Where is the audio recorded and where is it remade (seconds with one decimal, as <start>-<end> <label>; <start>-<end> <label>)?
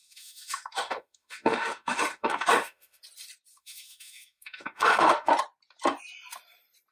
0.0-3.0 remade; 3.0-3.5 recorded; 3.5-5.3 remade; 5.3-6.9 recorded